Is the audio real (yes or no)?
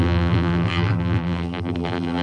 no